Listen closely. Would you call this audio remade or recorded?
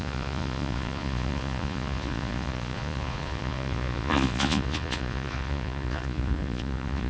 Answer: remade